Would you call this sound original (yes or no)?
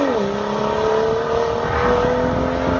yes